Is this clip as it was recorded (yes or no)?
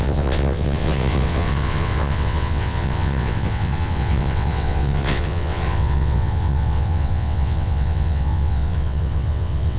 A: no